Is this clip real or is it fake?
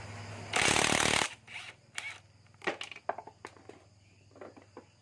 real